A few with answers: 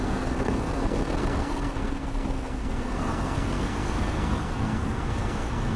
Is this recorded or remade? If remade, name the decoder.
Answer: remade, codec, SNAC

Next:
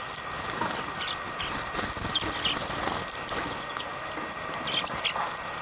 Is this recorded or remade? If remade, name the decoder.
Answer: remade, vocoder, BigVGAN v2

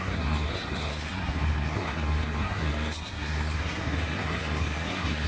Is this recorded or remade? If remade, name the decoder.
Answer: remade, codec, SNAC